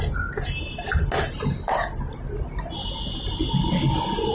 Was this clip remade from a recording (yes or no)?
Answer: no